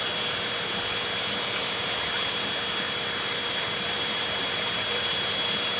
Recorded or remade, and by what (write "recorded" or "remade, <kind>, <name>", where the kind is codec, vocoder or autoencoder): remade, vocoder, BigVGAN v2